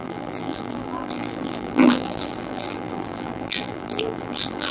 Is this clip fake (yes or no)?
yes